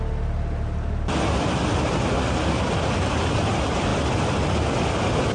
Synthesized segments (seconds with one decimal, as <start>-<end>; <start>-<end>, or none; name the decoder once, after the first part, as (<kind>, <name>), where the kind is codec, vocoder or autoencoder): none